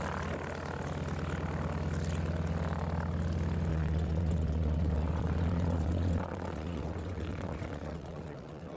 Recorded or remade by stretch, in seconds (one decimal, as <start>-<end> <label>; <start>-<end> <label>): 0.0-3.7 recorded; 3.7-8.8 remade